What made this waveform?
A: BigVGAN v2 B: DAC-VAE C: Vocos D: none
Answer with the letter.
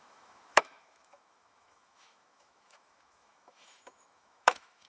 B